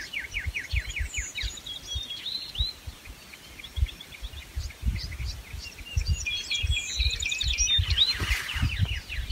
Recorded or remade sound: remade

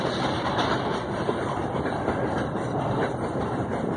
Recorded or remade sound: remade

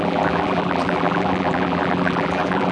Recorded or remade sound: remade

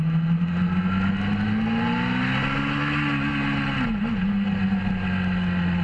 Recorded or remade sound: recorded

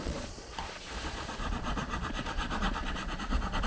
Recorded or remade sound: remade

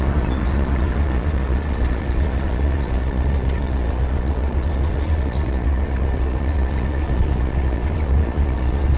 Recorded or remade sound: remade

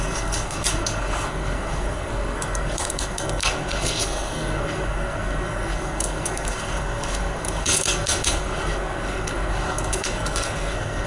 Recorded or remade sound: remade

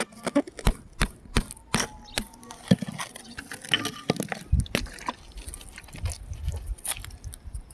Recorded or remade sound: recorded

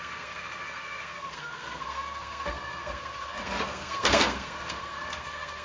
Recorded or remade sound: remade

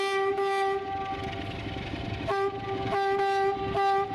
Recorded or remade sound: recorded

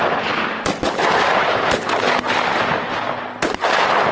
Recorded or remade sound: recorded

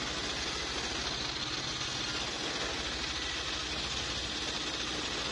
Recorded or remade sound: recorded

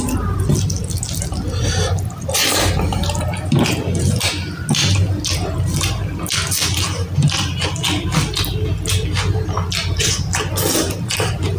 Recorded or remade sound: recorded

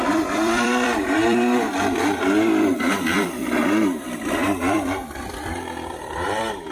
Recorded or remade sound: remade